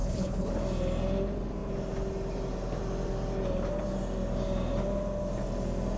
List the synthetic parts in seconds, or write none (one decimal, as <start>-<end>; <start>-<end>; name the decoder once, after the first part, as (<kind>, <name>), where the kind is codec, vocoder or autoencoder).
0.0-0.5 (codec, HILCodec)